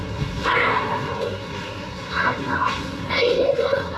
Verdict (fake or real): fake